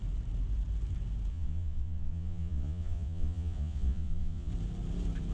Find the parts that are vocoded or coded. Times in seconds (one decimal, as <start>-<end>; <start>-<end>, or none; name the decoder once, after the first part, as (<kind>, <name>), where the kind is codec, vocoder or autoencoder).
1.3-4.5 (vocoder, Vocos)